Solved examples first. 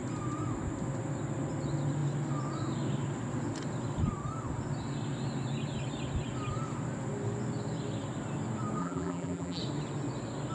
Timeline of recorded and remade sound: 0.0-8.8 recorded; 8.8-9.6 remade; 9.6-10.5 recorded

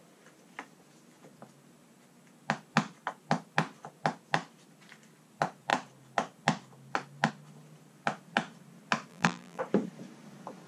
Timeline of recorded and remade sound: 0.0-9.1 recorded; 9.1-9.6 remade; 9.6-10.7 recorded

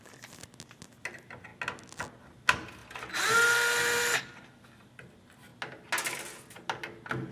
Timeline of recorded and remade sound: 0.0-2.8 recorded; 2.8-4.9 remade; 4.9-7.3 recorded

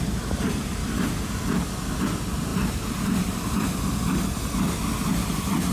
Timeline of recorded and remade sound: 0.0-0.8 remade; 0.8-2.0 recorded; 2.0-2.5 remade; 2.5-5.1 recorded; 5.1-5.7 remade

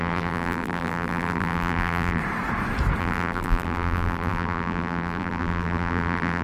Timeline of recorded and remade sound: 0.0-2.2 remade; 2.2-3.0 recorded; 3.0-6.4 remade

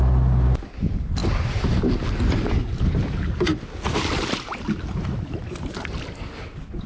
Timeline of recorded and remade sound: 0.0-1.2 recorded; 1.2-2.1 remade; 2.1-3.5 recorded; 3.5-6.0 remade; 6.0-6.9 recorded

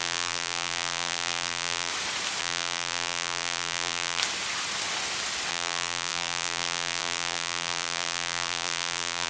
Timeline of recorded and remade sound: 0.0-1.9 remade; 1.9-2.4 recorded; 2.4-4.2 remade; 4.2-5.5 recorded; 5.5-9.3 remade

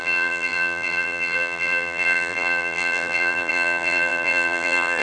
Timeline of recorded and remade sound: 0.0-5.0 remade